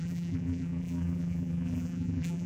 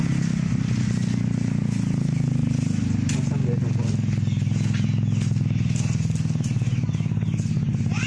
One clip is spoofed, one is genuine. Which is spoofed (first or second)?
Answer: first